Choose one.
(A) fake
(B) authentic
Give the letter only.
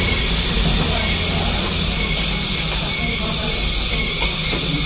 B